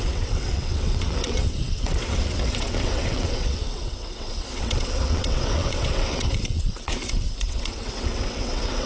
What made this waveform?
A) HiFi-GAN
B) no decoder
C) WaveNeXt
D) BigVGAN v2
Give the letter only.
C